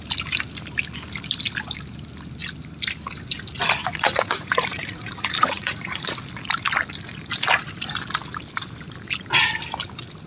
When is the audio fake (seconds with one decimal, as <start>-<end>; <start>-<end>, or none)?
3.8-6.1